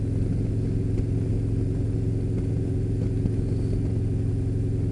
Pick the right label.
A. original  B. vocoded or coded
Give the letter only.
A